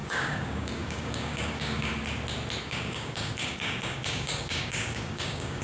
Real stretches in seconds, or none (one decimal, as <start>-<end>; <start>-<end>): 1.9-2.6